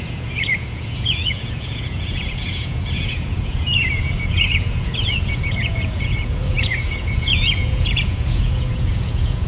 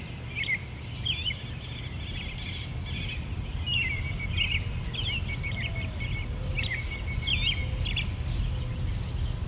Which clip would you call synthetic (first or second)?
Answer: first